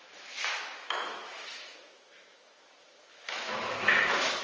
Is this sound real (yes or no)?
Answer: no